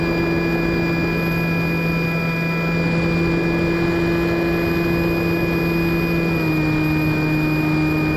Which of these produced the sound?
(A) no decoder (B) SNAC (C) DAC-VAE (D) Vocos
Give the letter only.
A